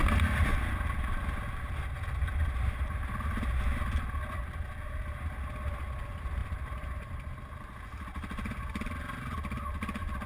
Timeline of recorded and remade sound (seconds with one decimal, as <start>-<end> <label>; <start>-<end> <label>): 0.0-0.5 recorded; 0.5-1.2 remade; 1.2-6.4 recorded; 6.4-7.1 remade; 7.1-10.3 recorded